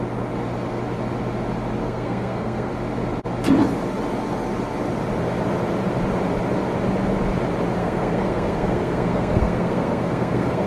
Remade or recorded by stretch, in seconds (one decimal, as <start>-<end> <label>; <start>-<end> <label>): 0.0-1.8 recorded; 1.8-2.7 remade; 2.7-7.8 recorded; 7.8-10.7 remade